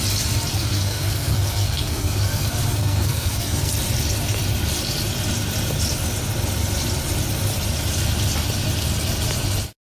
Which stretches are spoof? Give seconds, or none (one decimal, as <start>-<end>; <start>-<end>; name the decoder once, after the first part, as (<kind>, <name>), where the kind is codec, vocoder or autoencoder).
0.5-3.7 (codec, SNAC)